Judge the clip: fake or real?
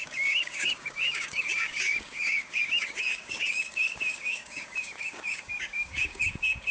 fake